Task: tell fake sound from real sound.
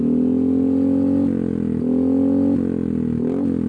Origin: real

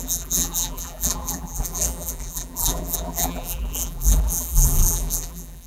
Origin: fake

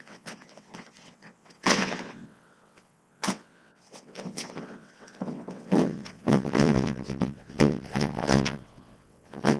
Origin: fake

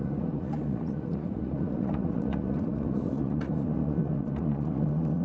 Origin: fake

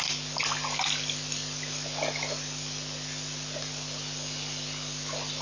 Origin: real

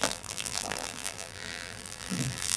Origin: fake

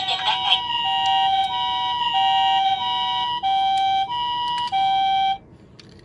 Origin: real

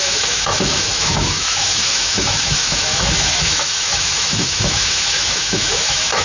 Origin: fake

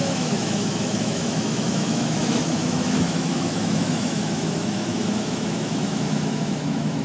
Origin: fake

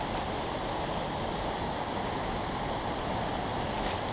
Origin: real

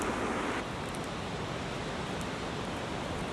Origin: real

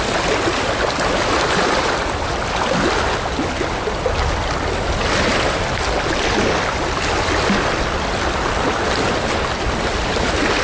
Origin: real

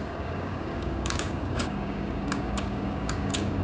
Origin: fake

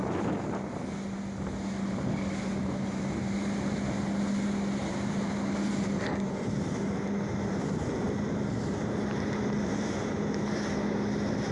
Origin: real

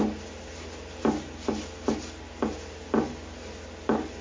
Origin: real